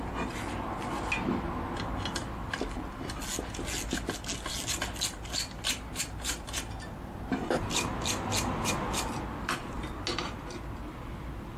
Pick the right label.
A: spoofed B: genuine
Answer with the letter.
B